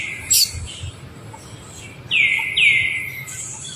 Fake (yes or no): no